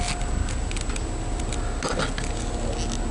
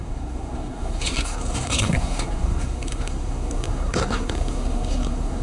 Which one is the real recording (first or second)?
first